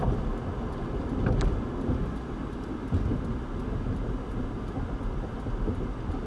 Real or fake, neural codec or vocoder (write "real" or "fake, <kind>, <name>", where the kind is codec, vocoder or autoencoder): real